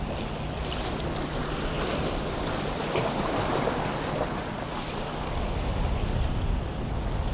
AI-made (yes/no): no